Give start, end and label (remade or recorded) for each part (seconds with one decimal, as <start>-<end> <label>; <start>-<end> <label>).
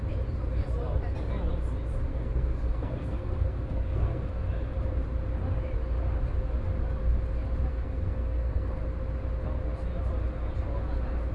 0.0-2.1 recorded; 2.1-4.3 remade; 4.3-7.7 recorded; 7.7-8.8 remade; 8.8-11.3 recorded